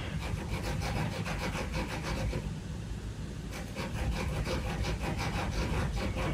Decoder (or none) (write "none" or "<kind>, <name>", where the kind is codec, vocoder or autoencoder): none